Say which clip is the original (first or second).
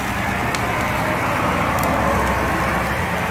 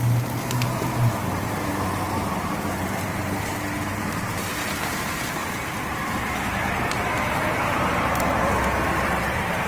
first